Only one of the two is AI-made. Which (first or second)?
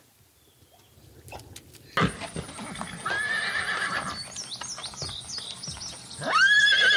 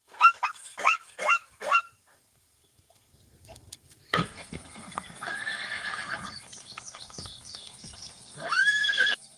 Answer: second